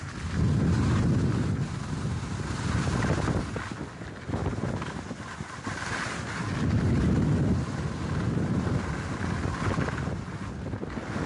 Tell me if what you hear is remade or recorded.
recorded